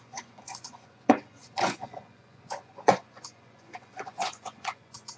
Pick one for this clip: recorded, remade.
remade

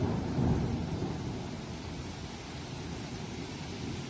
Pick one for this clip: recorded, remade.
recorded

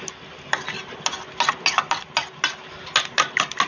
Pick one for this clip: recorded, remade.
recorded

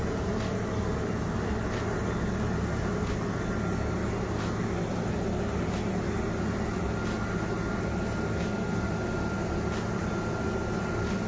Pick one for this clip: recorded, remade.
recorded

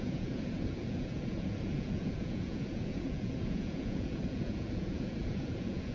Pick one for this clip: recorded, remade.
remade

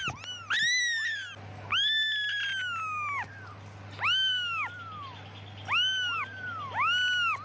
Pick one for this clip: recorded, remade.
recorded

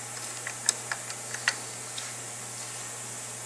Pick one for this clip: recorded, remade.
recorded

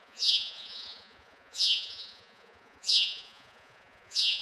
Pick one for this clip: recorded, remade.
remade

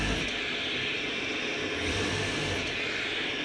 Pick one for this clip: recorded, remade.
recorded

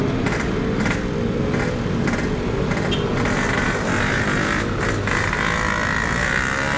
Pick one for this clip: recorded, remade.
recorded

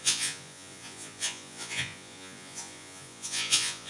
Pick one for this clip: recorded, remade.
remade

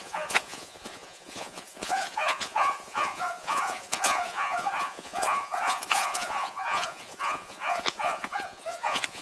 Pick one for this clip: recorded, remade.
remade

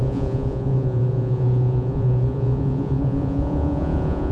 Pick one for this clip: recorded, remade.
remade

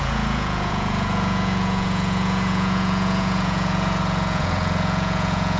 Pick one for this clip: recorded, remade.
remade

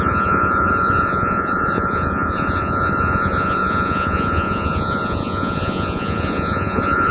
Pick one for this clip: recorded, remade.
remade